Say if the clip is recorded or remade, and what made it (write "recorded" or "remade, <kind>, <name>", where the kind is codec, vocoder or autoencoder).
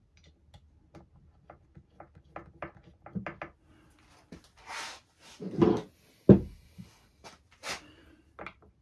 recorded